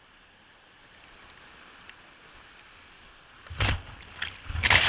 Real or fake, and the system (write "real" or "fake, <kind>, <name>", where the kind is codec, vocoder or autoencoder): fake, vocoder, BigVGAN v2